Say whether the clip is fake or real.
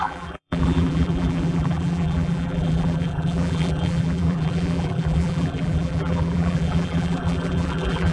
fake